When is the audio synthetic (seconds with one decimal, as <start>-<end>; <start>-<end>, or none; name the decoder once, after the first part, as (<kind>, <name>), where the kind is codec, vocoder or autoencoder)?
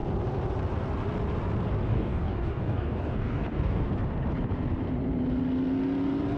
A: 1.9-3.9 (codec, DAC)